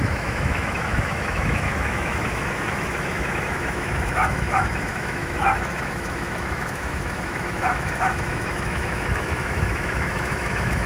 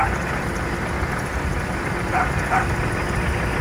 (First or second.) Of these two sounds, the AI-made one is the first